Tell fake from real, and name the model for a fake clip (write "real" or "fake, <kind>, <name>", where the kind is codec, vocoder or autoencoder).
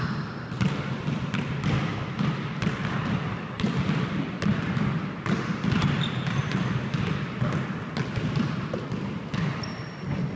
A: real